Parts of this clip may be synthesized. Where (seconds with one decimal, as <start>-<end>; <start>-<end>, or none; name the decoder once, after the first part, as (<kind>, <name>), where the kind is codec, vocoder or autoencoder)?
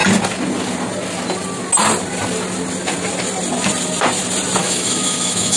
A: 4.6-5.6 (autoencoder, DAC-VAE)